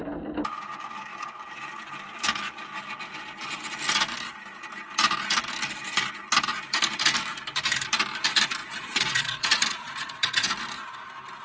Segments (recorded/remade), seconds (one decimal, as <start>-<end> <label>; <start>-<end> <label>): 0.0-8.6 recorded; 8.6-10.5 remade; 10.5-11.4 recorded